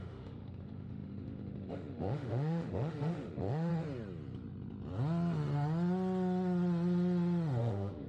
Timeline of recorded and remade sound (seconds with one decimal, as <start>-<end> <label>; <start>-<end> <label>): 0.0-3.7 remade; 3.7-7.6 recorded; 7.6-8.1 remade

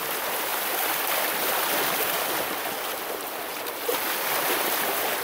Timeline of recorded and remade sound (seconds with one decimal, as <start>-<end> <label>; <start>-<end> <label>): 0.0-5.2 recorded

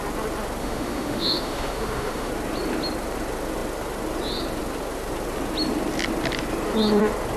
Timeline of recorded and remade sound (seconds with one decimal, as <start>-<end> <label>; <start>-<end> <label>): 0.0-0.6 recorded; 0.6-2.3 remade; 2.3-7.4 recorded

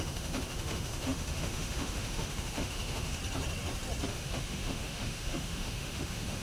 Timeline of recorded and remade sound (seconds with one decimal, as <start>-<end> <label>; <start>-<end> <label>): 0.0-3.2 remade; 3.2-4.1 recorded; 4.1-6.4 remade

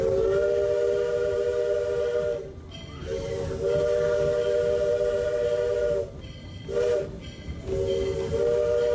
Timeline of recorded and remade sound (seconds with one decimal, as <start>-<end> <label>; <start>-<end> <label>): 0.0-8.9 recorded